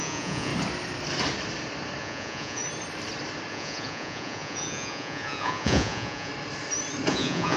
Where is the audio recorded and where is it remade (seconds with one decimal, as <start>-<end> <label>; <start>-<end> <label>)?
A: 0.0-0.5 remade; 0.5-2.0 recorded; 2.0-2.6 remade; 2.6-3.5 recorded; 3.5-6.3 remade; 6.3-7.1 recorded; 7.1-7.6 remade